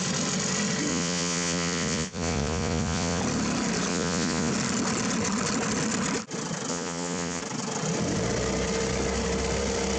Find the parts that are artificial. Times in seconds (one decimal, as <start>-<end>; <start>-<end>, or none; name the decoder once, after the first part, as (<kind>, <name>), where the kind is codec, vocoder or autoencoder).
0.9-3.2 (vocoder, Vocos); 3.9-4.5; 6.7-7.4